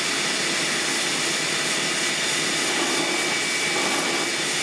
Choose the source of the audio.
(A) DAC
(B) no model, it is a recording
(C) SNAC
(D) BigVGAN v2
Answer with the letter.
B